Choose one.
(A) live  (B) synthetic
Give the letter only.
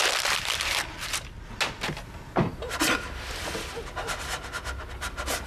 A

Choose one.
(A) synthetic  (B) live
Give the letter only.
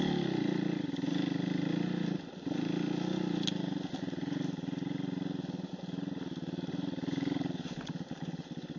B